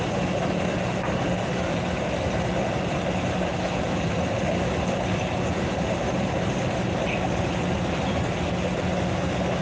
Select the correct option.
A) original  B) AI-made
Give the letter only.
A